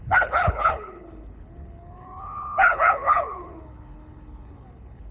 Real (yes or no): no